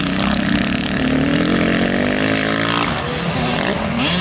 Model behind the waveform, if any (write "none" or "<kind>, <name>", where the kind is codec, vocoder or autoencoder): none